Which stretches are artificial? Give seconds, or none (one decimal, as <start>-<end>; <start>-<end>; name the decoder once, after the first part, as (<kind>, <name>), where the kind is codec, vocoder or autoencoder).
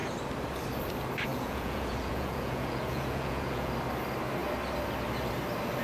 1.3-3.7 (vocoder, Vocos)